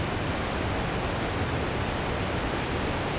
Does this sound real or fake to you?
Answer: real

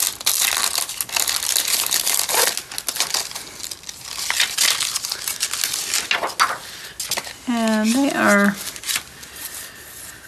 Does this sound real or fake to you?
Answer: real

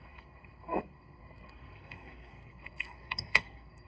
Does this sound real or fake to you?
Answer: fake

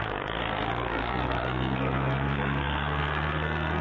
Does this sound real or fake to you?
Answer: fake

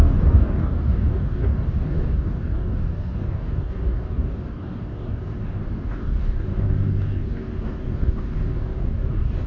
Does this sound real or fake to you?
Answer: fake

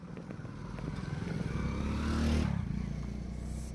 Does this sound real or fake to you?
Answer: real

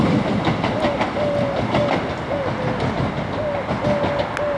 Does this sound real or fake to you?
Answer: real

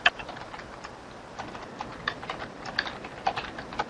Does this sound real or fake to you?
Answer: real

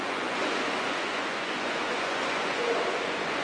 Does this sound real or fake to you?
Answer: fake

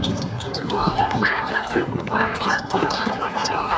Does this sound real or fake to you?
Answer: fake